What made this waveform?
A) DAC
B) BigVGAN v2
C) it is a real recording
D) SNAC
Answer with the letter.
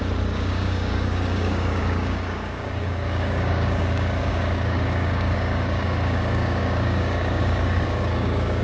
A